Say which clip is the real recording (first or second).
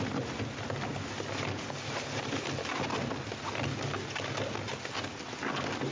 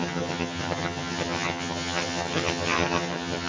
first